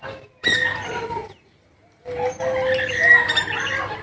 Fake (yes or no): no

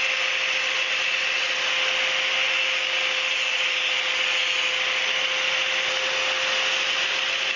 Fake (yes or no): no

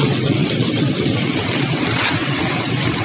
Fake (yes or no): yes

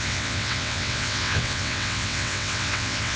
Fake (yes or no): yes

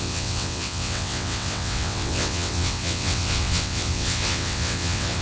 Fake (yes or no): yes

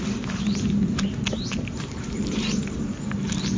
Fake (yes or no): no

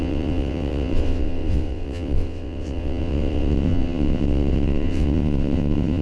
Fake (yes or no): yes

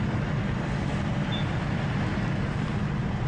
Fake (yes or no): no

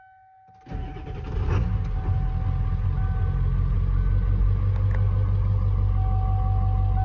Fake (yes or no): no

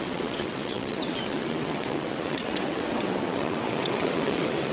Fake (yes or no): yes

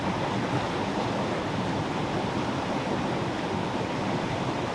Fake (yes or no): no